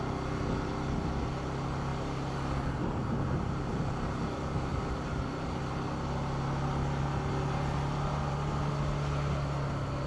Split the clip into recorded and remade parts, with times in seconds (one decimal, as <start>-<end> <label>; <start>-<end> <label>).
0.0-10.1 recorded